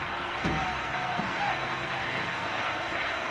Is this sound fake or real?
fake